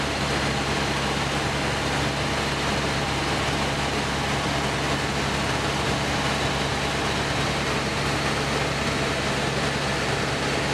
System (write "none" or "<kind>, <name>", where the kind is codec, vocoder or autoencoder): none